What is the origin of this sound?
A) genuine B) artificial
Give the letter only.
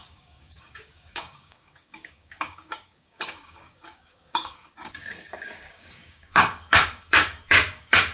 B